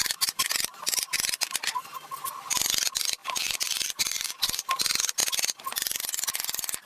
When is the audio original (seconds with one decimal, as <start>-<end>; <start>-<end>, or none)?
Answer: 0.0-3.2; 4.7-6.9